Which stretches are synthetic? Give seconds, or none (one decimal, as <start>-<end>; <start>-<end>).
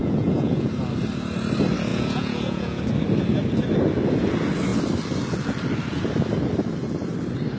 0.0-0.7; 1.9-2.8